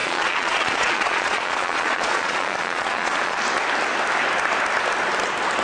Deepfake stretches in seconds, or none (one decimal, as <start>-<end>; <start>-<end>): 0.0-3.4